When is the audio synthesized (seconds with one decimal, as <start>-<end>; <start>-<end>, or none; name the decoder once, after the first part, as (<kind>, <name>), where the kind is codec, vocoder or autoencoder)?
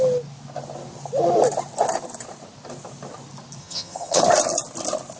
3.6-4.2 (vocoder, HiFi-GAN)